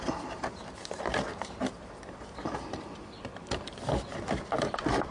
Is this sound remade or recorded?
recorded